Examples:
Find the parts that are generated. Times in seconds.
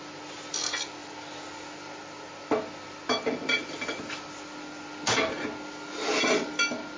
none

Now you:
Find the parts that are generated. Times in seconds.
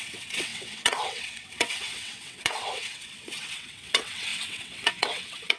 0.0-5.6 (vocoder, WaveNeXt)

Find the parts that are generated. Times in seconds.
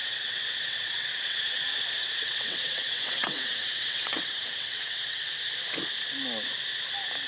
0.0-1.6 (vocoder, WaveNeXt); 2.0-5.2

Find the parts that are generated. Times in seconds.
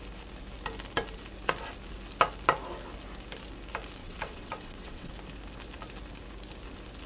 4.0-5.1 (vocoder, WaveNeXt)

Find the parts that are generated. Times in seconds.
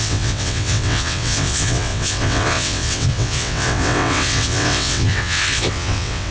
0.0-6.3 (vocoder, WaveNeXt)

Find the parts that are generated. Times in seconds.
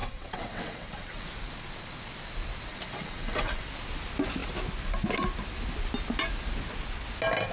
0.0-1.3 (vocoder, WaveNeXt); 2.7-3.7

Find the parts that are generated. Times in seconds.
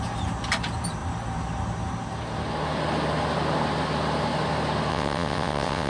4.9-5.9 (vocoder, WaveNeXt)